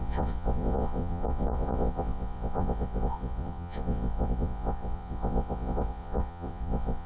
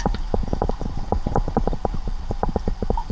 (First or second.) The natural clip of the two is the second